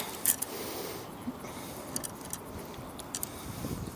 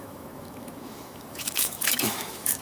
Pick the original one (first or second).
first